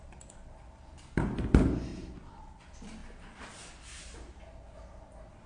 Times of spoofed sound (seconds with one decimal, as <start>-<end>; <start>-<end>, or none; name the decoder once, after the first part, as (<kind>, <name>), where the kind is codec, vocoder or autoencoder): 1.9-2.6 (vocoder, BigVGAN v2); 3.0-3.5; 3.9-4.4

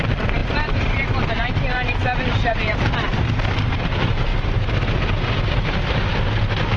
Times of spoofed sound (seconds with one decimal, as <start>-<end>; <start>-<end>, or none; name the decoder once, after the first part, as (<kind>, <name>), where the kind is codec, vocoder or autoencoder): 0.0-4.3 (vocoder, BigVGAN v2)

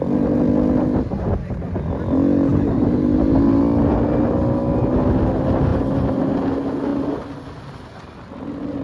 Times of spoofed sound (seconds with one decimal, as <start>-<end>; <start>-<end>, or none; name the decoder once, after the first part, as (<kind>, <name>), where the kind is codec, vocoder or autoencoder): 2.5-3.6 (vocoder, BigVGAN v2); 5.7-6.2

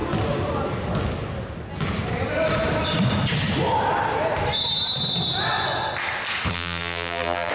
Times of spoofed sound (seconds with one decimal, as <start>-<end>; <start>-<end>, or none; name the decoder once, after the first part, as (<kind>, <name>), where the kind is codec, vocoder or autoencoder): 6.5-7.5 (vocoder, BigVGAN v2)

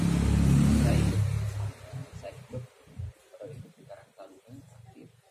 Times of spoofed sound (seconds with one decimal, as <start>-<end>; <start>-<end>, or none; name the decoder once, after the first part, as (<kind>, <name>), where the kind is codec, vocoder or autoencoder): none

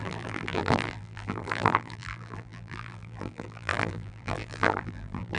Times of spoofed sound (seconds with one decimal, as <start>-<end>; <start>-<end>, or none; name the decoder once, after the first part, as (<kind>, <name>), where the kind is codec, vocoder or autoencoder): 0.0-5.4 (vocoder, BigVGAN v2)